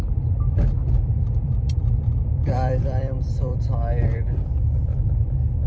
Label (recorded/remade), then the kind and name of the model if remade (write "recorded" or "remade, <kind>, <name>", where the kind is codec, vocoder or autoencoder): remade, vocoder, BigVGAN v2